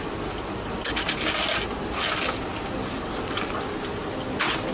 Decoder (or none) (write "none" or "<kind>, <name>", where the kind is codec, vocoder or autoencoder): none